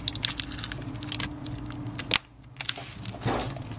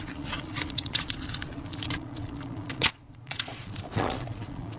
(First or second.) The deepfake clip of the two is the second